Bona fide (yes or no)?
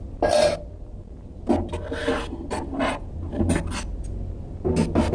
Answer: yes